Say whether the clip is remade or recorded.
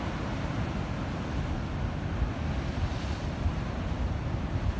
recorded